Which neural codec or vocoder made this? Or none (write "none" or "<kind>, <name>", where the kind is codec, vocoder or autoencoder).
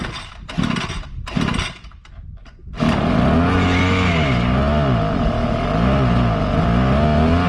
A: none